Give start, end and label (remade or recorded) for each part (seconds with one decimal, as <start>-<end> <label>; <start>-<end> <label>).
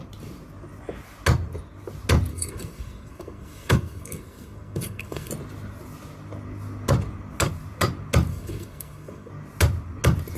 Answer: 0.0-2.3 recorded; 2.3-5.3 remade; 5.3-8.3 recorded; 8.3-9.3 remade; 9.3-10.4 recorded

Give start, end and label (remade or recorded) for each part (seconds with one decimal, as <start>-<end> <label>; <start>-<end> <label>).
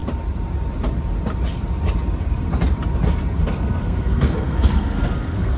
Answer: 0.0-3.4 recorded; 3.4-5.6 remade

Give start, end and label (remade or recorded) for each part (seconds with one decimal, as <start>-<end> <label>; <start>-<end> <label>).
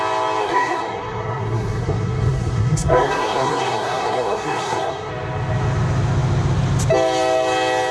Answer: 0.0-0.4 recorded; 0.4-5.1 remade; 5.1-7.9 recorded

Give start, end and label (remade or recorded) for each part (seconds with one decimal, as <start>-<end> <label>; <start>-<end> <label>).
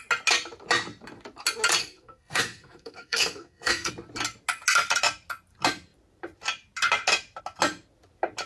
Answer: 0.0-1.8 recorded; 1.8-3.9 remade; 3.9-8.5 recorded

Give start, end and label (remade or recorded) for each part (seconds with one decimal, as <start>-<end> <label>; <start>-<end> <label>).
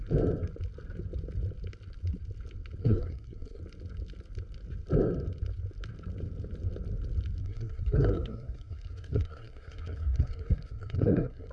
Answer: 0.0-2.8 recorded; 2.8-3.6 remade; 3.6-7.4 recorded; 7.4-11.5 remade